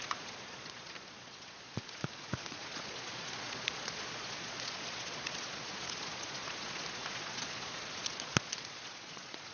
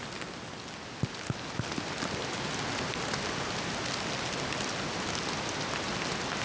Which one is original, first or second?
second